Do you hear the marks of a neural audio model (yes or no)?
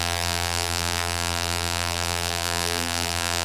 yes